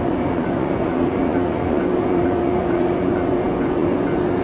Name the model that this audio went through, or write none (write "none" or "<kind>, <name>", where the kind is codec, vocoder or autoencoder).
vocoder, Vocos